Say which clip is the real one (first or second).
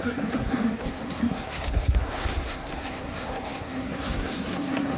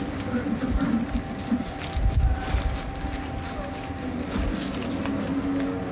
second